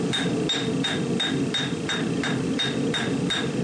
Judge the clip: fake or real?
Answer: real